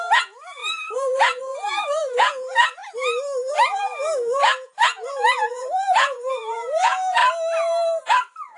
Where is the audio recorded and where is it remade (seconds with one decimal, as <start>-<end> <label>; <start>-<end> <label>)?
0.0-2.8 remade; 2.8-3.5 recorded; 3.5-7.2 remade; 7.2-8.6 recorded